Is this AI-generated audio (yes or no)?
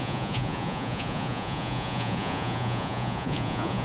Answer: yes